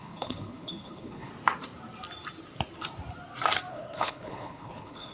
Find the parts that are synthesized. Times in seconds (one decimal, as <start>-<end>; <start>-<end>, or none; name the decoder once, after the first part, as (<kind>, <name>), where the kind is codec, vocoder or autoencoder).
0.0-1.3 (codec, HILCodec); 3.7-5.1